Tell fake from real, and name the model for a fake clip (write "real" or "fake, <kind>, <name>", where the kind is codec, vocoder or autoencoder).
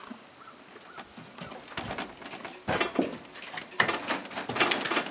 real